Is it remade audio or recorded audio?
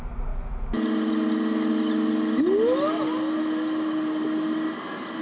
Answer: recorded